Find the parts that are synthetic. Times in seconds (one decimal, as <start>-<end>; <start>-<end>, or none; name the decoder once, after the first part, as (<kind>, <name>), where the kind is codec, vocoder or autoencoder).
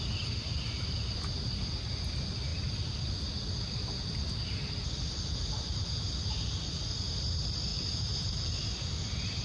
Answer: 7.7-8.5 (vocoder, BigVGAN v2)